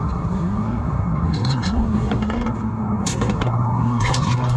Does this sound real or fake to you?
fake